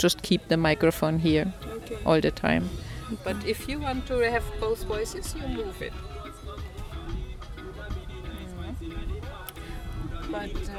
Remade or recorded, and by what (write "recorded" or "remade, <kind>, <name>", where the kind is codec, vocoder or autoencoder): recorded